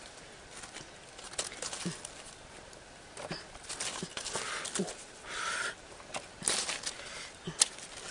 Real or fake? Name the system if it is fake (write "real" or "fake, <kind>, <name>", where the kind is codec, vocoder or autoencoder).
real